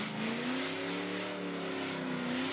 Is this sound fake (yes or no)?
no